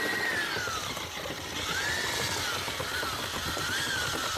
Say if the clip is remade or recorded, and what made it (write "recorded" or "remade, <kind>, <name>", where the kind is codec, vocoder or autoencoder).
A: remade, vocoder, BigVGAN v2